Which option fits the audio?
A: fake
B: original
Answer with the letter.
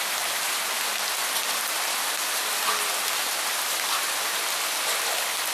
B